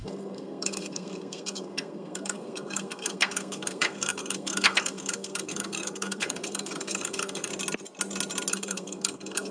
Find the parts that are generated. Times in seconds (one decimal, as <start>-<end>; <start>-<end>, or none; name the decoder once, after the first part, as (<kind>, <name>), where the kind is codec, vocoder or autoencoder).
0.0-7.5 (codec, SNAC); 8.5-9.5